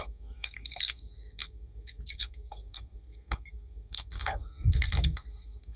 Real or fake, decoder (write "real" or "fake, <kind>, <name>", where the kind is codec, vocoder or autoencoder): fake, codec, SNAC